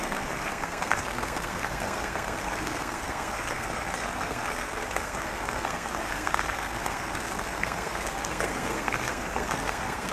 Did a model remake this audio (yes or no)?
yes